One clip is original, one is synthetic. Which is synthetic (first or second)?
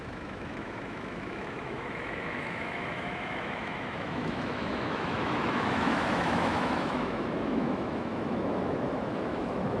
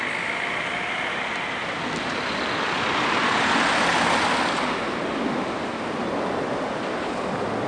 first